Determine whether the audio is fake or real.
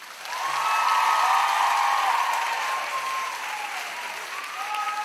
real